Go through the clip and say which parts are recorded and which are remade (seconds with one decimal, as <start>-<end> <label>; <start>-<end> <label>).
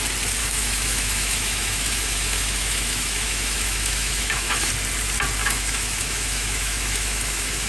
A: 0.0-0.4 recorded; 0.4-4.7 remade; 4.7-5.4 recorded; 5.4-7.7 remade